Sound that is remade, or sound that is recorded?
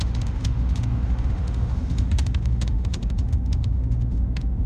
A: remade